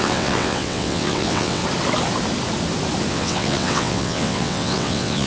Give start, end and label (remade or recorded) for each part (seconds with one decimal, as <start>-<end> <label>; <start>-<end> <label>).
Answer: 0.0-1.6 remade; 1.6-3.1 recorded; 3.1-5.3 remade